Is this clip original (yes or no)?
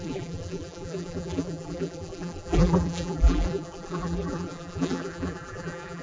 no